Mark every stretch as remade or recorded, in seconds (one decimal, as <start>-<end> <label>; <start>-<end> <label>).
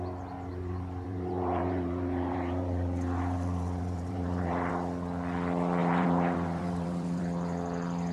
0.0-0.5 recorded; 0.5-4.7 remade; 4.7-5.8 recorded; 5.8-7.2 remade; 7.2-8.1 recorded